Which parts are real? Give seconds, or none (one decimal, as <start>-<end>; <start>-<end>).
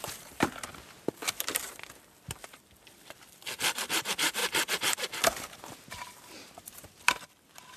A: 4.4-6.6